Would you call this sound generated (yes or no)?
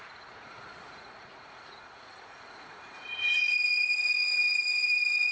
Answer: yes